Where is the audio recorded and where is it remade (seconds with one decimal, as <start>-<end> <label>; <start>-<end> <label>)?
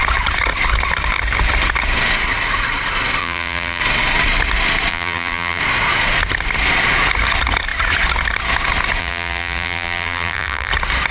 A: 0.0-3.2 recorded; 3.2-3.8 remade; 3.8-4.9 recorded; 4.9-5.6 remade; 5.6-9.0 recorded; 9.0-10.7 remade; 10.7-11.1 recorded